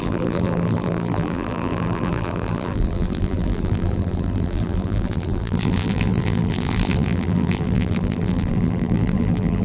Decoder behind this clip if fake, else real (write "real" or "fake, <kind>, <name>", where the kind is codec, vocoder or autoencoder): fake, vocoder, BigVGAN v2